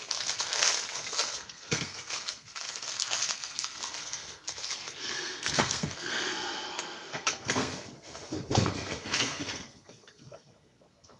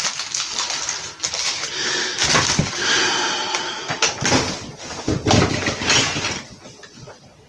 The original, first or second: second